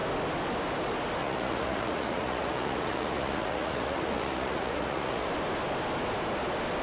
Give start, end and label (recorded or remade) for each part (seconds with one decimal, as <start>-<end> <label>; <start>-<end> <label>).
0.0-1.2 recorded; 1.2-5.3 remade; 5.3-6.8 recorded